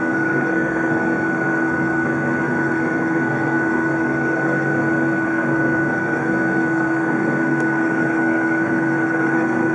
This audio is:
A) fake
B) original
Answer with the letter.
A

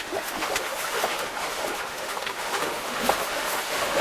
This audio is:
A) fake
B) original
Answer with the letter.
A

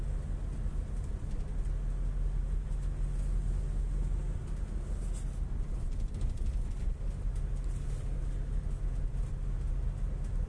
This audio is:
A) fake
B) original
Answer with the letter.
B